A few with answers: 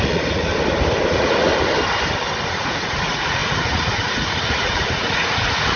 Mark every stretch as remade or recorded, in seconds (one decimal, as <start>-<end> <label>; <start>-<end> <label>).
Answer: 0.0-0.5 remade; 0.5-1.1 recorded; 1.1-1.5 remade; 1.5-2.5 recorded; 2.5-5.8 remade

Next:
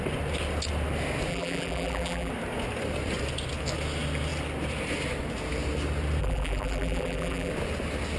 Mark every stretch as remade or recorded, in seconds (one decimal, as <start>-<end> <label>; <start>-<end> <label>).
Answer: 0.0-1.3 recorded; 1.3-2.3 remade; 2.3-6.2 recorded; 6.2-7.5 remade; 7.5-8.2 recorded

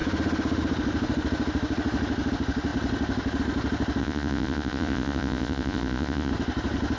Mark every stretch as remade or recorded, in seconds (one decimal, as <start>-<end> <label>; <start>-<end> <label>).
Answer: 0.0-4.0 recorded; 4.0-6.3 remade; 6.3-7.0 recorded

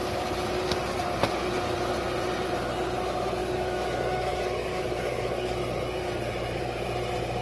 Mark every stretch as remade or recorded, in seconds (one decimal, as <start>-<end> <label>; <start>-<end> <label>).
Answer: 0.0-3.4 recorded; 3.4-5.6 remade; 5.6-7.4 recorded

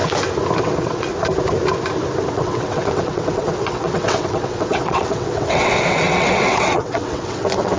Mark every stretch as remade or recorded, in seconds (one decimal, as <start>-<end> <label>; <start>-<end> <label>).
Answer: 0.0-0.6 recorded; 0.6-1.1 remade; 1.1-2.3 recorded; 2.3-7.8 remade